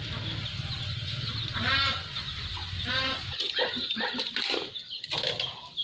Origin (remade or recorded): recorded